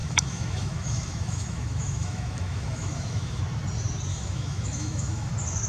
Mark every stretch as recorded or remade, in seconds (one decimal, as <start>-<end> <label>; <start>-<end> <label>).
0.0-3.4 remade; 3.4-4.1 recorded; 4.1-5.3 remade; 5.3-5.7 recorded